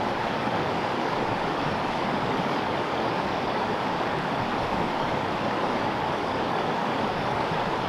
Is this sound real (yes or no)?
no